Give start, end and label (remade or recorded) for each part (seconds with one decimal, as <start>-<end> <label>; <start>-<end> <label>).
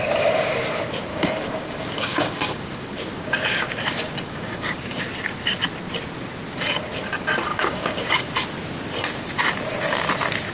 0.0-1.1 recorded; 1.1-5.0 remade; 5.0-7.5 recorded; 7.5-8.3 remade; 8.3-10.5 recorded